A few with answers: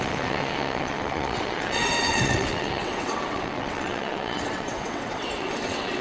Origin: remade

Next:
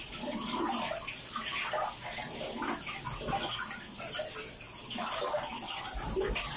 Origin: recorded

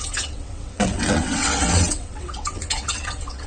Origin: remade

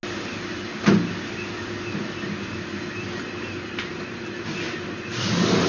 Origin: recorded